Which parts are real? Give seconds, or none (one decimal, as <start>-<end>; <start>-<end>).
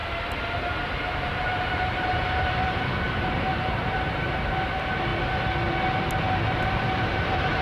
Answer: 5.1-6.1